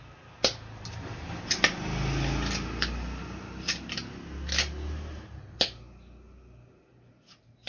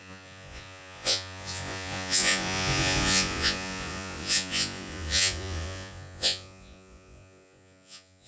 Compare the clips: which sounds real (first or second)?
first